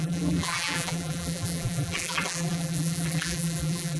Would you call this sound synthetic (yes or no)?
yes